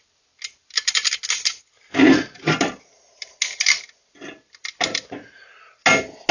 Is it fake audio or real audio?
real